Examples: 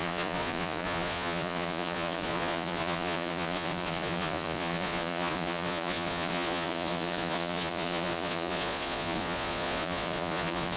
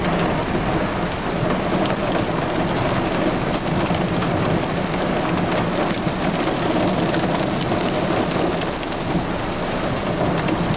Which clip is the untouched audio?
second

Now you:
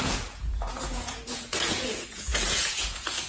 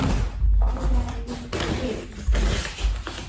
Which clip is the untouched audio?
second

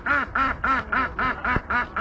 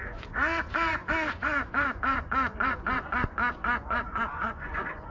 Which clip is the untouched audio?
first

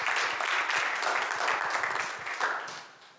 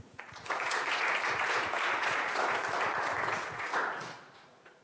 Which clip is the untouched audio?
first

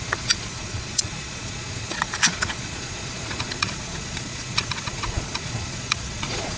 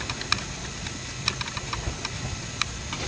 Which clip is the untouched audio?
second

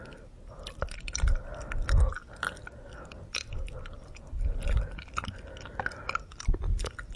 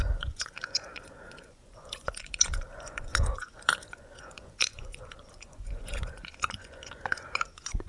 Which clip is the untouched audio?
first